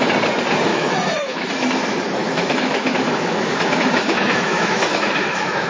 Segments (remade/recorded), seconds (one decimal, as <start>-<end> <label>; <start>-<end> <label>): 0.0-0.7 recorded; 0.7-1.5 remade; 1.5-2.2 recorded; 2.2-5.7 remade